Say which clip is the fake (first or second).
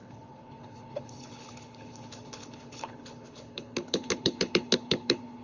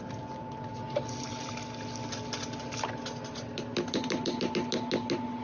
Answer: first